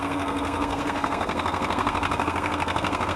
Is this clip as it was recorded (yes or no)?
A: no